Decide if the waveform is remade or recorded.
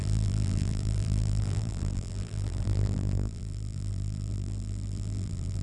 remade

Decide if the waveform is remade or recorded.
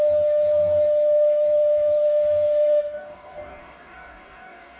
remade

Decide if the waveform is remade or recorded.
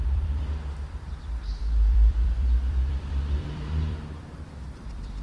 remade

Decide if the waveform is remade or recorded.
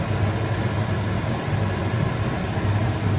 recorded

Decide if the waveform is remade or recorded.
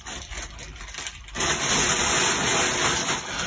recorded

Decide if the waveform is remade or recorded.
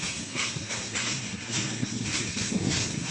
remade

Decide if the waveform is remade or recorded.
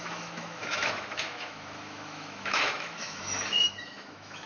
remade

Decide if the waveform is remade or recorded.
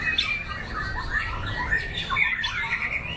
recorded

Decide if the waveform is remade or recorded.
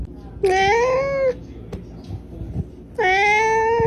recorded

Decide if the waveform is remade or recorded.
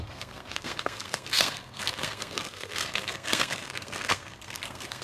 remade